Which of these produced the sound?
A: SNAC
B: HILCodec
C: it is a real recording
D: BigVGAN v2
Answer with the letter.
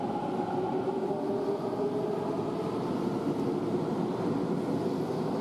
C